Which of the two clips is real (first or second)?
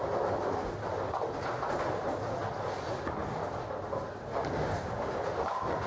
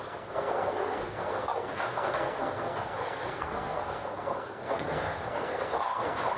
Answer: first